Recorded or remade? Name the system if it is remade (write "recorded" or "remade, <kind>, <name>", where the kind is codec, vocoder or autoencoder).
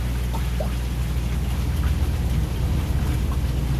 recorded